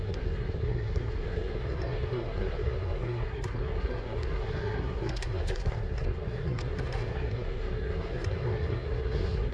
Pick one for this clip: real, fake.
fake